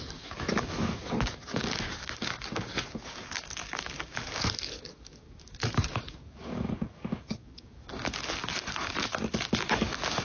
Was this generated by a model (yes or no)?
yes